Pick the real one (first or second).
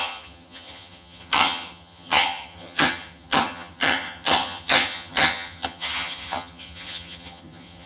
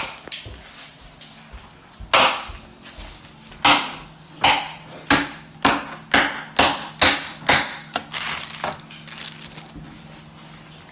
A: second